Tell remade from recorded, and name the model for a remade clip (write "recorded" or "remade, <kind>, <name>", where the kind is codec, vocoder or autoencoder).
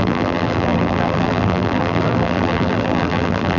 remade, vocoder, BigVGAN v2